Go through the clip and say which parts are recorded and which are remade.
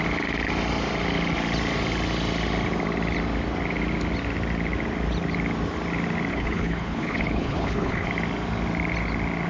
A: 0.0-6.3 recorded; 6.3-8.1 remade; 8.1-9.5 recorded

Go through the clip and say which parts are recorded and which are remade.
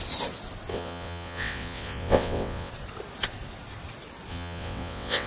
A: 0.0-0.7 recorded; 0.7-2.7 remade; 2.7-4.3 recorded; 4.3-5.3 remade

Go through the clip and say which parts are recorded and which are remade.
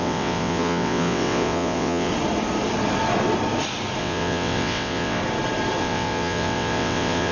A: 0.0-2.1 remade; 2.1-4.0 recorded; 4.0-5.2 remade; 5.2-5.8 recorded; 5.8-7.3 remade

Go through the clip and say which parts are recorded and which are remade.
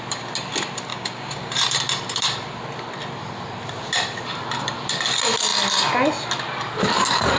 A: 0.0-0.9 recorded; 0.9-1.5 remade; 1.5-7.4 recorded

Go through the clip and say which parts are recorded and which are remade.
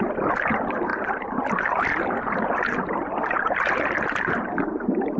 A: 0.0-0.9 recorded; 0.9-4.0 remade; 4.0-5.2 recorded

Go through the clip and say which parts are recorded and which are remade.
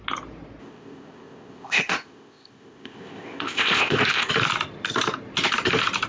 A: 0.0-0.6 recorded; 0.6-4.3 remade; 4.3-6.1 recorded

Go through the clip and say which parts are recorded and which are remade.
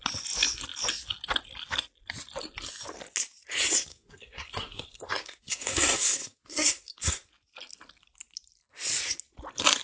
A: 0.0-3.9 recorded; 3.9-7.3 remade; 7.3-9.8 recorded